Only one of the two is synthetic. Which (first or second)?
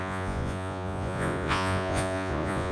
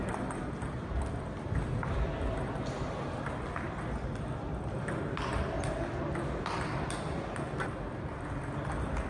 first